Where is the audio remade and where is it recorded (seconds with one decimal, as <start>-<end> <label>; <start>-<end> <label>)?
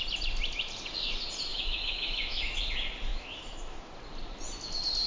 0.0-1.5 recorded; 1.5-2.6 remade; 2.6-3.1 recorded; 3.1-3.9 remade; 3.9-5.1 recorded